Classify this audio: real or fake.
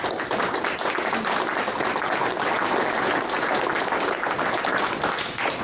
real